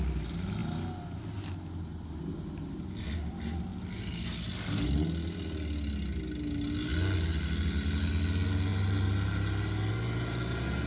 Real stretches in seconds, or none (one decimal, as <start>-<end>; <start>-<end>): 0.0-10.9